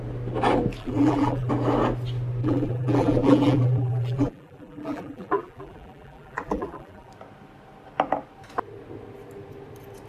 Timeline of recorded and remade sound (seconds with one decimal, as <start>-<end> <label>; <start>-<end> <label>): 0.0-0.8 recorded; 0.8-1.5 remade; 1.5-2.4 recorded; 2.4-7.1 remade; 7.1-10.1 recorded